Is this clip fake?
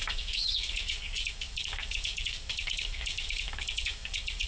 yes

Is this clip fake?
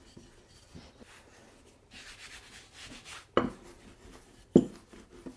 no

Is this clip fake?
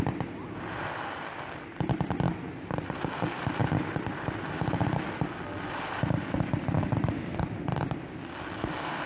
no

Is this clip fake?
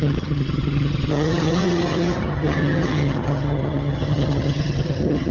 yes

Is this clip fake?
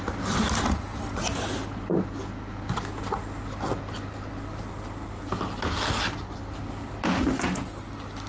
no